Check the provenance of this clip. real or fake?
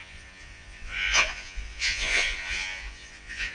fake